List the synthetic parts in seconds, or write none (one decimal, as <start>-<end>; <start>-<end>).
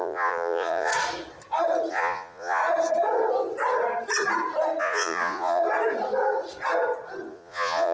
0.0-0.9; 1.9-2.6; 4.8-5.6; 7.3-7.9